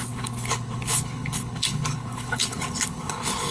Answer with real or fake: fake